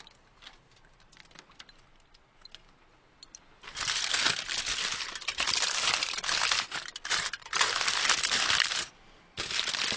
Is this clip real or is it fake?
real